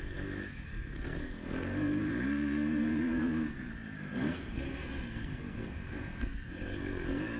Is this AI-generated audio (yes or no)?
yes